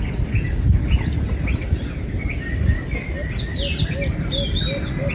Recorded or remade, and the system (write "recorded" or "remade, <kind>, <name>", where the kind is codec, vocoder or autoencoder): recorded